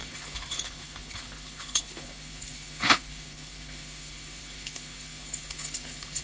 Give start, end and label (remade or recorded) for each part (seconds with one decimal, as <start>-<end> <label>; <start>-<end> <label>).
0.0-6.2 remade

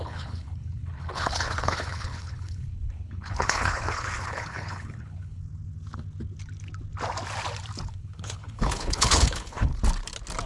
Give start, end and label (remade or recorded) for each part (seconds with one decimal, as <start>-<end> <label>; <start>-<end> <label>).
0.0-5.4 remade; 5.4-7.9 recorded; 7.9-9.7 remade; 9.7-10.5 recorded

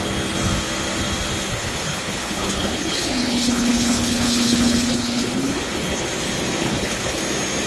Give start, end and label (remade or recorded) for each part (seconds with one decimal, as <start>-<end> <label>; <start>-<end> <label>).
0.0-1.5 recorded; 1.5-6.1 remade; 6.1-6.6 recorded; 6.6-7.2 remade; 7.2-7.7 recorded

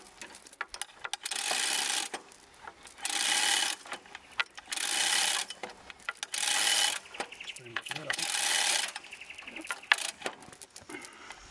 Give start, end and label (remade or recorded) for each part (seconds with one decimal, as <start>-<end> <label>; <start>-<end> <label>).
0.0-7.7 recorded; 7.7-8.2 remade; 8.2-11.5 recorded

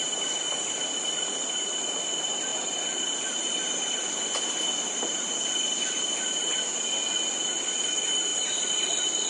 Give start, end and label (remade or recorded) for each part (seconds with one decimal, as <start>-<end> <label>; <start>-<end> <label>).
0.0-9.3 recorded